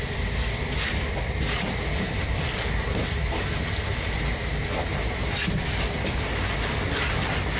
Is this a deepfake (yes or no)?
no